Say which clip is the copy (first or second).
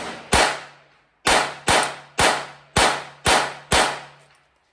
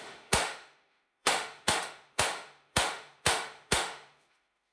second